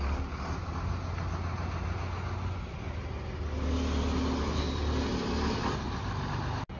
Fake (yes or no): no